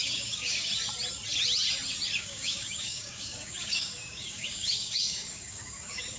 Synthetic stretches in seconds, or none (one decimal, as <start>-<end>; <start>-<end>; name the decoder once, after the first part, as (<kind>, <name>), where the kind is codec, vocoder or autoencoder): 0.0-0.7 (codec, DAC); 2.2-6.2